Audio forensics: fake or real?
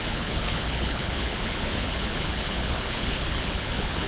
fake